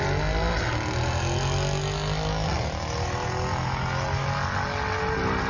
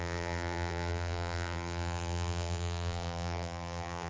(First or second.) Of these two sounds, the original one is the first